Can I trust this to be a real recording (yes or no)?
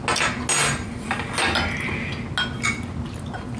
yes